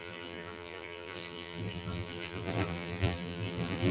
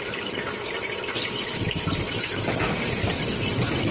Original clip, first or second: second